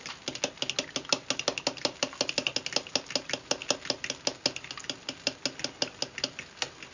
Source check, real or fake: real